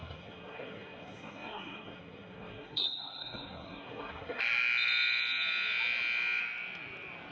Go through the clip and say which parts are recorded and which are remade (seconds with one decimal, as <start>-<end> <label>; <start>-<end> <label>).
0.0-4.4 remade; 4.4-7.3 recorded

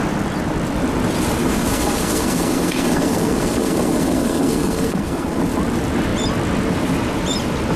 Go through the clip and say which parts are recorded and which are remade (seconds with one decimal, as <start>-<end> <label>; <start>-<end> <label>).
0.0-1.4 recorded; 1.4-5.4 remade; 5.4-7.8 recorded

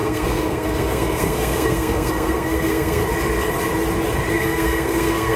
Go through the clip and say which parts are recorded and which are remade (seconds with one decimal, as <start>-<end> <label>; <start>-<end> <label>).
0.0-3.0 remade; 3.0-4.3 recorded; 4.3-5.4 remade